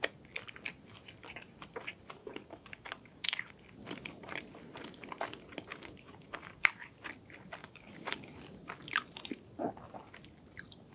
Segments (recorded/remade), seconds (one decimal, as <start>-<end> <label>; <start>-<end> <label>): 0.0-2.2 recorded; 2.2-3.5 remade; 3.5-5.7 recorded; 5.7-7.1 remade; 7.1-7.6 recorded; 7.6-8.2 remade; 8.2-10.9 recorded